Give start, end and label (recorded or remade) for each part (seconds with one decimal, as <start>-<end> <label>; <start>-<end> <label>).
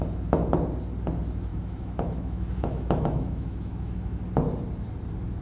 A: 0.0-1.5 recorded; 1.5-4.2 remade; 4.2-5.4 recorded